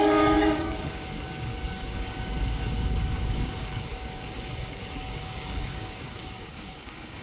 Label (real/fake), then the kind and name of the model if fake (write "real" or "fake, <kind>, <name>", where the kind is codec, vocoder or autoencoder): fake, codec, DAC